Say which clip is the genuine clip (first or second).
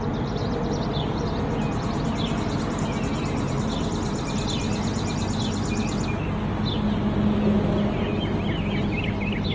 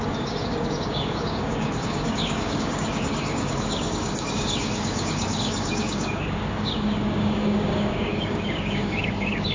first